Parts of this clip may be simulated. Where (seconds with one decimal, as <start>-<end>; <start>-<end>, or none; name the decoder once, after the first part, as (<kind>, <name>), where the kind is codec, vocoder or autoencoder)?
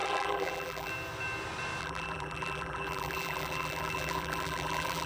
0.0-0.9 (vocoder, BigVGAN v2); 1.8-5.1